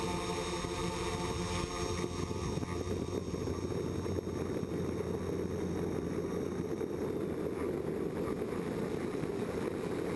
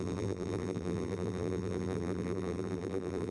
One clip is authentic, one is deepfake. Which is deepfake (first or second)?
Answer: second